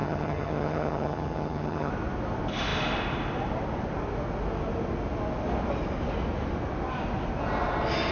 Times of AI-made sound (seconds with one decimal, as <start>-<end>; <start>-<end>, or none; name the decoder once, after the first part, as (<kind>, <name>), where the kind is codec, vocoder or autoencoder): 0.0-1.9 (vocoder, HiFi-GAN)